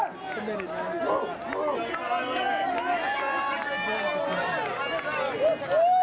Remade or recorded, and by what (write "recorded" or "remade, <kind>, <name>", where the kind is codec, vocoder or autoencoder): recorded